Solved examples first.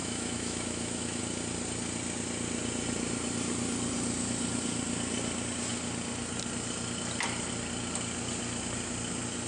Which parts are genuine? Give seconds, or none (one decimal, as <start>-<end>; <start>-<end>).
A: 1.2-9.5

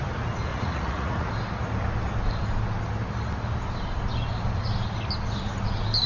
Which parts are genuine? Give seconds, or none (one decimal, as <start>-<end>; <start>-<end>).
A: 0.0-0.5; 1.3-6.1

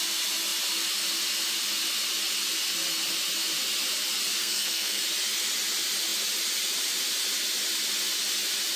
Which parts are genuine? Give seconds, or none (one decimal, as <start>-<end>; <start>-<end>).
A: 0.0-4.4; 5.0-8.8

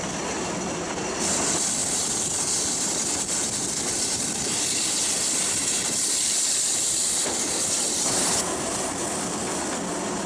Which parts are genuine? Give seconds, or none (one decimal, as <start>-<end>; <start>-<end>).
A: 0.0-1.8; 5.0-5.6; 9.7-10.3

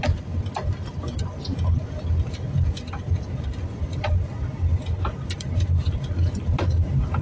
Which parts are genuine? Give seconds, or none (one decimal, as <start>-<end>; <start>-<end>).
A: 0.0-7.2

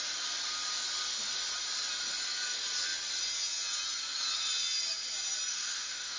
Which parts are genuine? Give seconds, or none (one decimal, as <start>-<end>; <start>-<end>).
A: 0.0-5.5